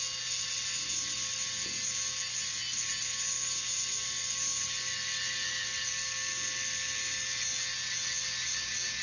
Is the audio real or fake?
real